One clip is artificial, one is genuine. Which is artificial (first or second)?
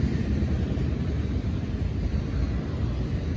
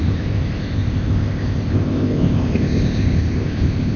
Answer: second